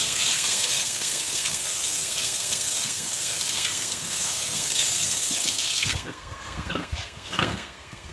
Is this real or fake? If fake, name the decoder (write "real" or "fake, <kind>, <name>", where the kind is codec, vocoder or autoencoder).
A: fake, codec, SNAC